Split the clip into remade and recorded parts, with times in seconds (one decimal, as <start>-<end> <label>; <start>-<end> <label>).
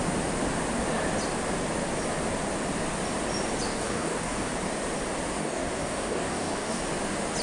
0.0-3.7 recorded; 3.7-4.5 remade; 4.5-5.4 recorded; 5.4-6.8 remade; 6.8-7.4 recorded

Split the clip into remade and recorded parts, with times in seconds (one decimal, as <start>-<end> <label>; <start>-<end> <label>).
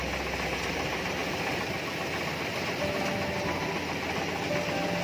0.0-5.0 recorded